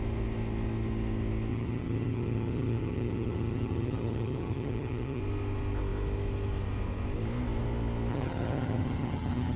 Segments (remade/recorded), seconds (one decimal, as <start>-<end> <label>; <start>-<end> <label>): 0.0-1.5 recorded; 1.5-5.2 remade; 5.2-8.1 recorded; 8.1-9.6 remade